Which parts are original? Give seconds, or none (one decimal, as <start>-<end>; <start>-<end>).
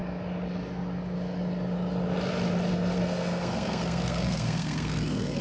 0.0-2.7